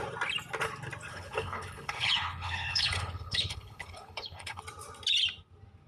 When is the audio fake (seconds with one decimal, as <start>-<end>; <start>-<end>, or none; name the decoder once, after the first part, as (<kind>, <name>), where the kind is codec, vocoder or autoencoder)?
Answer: 1.1-4.6 (codec, HILCodec)